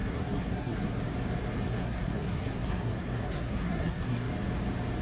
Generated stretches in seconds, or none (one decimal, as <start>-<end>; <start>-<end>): 0.0-1.0; 1.7-4.3